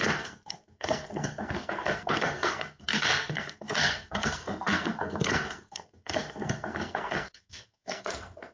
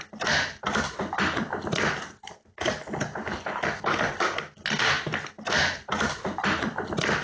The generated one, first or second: first